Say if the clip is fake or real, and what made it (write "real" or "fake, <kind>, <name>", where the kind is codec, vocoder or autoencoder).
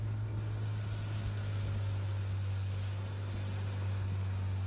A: real